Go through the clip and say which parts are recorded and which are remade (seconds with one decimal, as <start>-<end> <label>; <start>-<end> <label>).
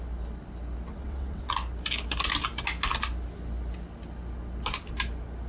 0.0-0.9 recorded; 0.9-1.5 remade; 1.5-5.5 recorded